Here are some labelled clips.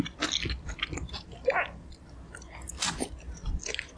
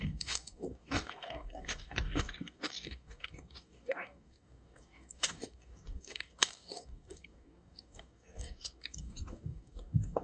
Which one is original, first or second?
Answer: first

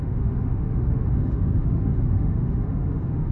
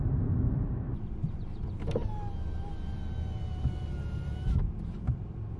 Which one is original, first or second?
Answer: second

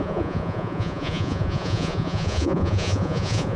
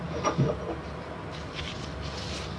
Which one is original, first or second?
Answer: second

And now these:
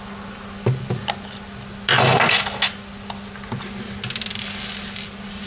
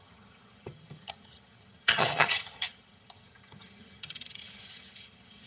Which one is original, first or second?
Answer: first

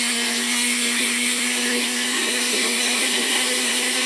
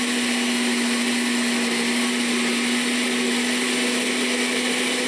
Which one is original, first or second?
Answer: second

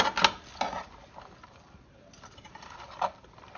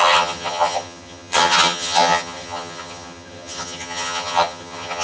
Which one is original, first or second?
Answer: first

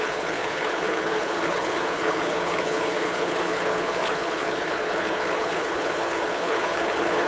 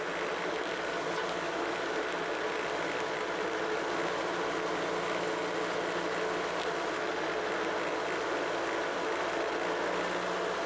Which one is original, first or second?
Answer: second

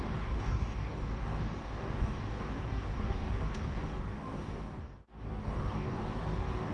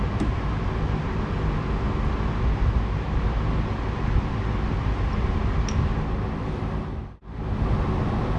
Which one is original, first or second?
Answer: second